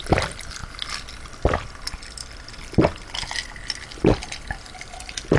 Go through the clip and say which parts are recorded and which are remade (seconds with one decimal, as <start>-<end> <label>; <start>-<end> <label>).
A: 0.0-0.6 remade; 0.6-3.8 recorded; 3.8-5.4 remade